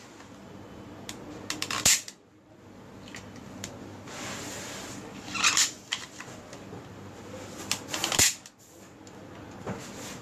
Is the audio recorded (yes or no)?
yes